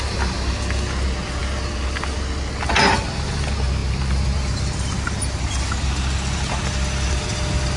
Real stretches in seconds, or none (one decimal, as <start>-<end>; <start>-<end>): 0.0-7.8